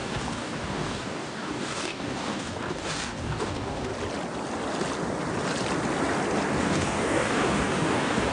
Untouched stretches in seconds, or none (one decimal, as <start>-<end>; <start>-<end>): 3.9-6.6